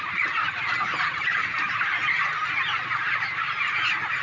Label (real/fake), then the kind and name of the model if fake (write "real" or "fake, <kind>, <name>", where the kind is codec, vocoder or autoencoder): fake, vocoder, BigVGAN v2